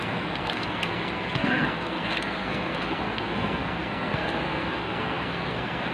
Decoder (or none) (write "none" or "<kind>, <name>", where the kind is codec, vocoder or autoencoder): codec, SNAC